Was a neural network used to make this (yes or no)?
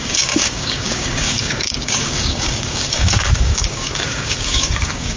yes